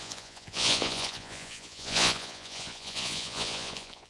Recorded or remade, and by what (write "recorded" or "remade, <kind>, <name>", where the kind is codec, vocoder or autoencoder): remade, vocoder, Vocos